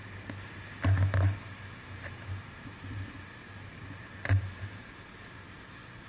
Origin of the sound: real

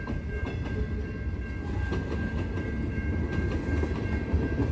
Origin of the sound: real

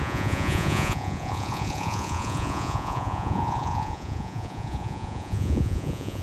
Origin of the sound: fake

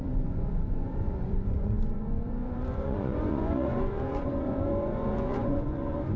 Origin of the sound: fake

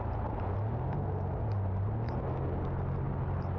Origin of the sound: real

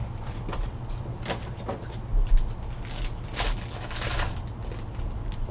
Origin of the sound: real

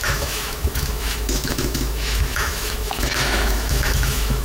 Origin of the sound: fake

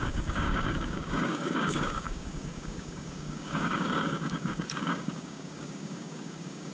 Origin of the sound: fake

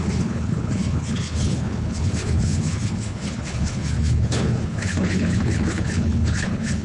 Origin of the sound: fake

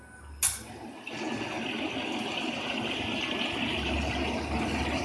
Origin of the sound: real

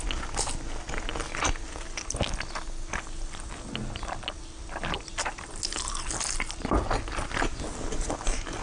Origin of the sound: real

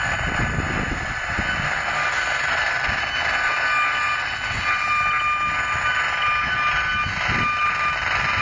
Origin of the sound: real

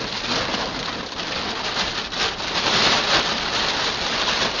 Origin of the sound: real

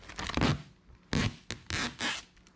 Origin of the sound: real